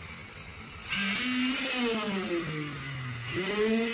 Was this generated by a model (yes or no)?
no